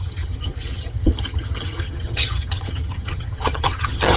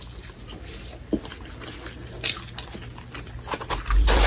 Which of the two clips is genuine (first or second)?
second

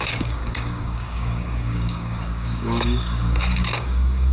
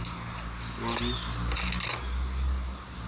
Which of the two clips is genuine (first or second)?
second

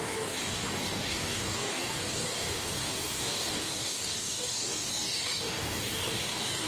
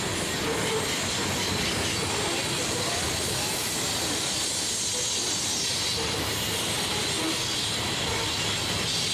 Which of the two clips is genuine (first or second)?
second